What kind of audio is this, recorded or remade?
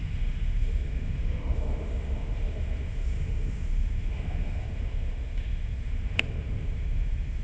remade